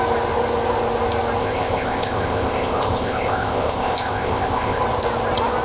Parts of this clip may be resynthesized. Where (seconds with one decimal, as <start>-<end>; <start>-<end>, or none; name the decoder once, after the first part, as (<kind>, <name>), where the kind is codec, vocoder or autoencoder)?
1.4-4.8 (codec, ZipCodec)